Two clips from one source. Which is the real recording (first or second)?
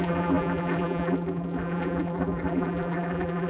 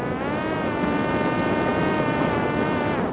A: second